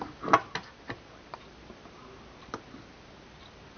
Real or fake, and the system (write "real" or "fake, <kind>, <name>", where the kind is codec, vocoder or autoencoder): real